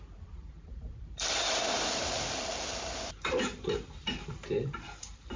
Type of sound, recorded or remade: remade